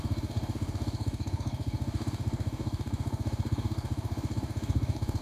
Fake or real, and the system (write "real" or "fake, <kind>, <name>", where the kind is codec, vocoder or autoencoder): fake, codec, DAC